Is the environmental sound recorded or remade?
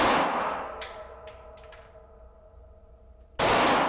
recorded